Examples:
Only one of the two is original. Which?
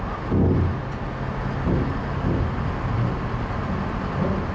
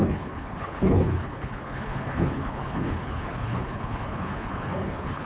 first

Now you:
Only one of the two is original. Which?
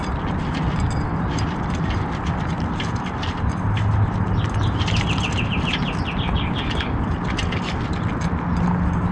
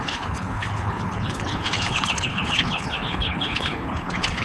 first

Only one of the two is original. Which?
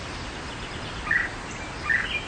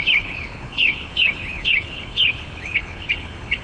first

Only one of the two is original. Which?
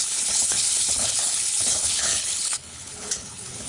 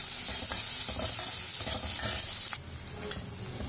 second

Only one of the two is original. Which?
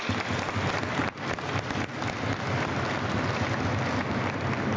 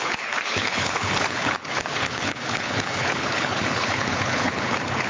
first